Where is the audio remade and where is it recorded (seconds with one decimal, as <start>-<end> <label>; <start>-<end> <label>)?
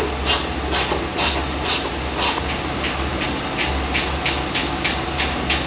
0.0-5.7 recorded